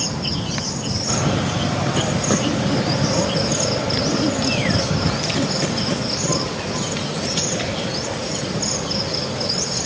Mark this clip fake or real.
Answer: real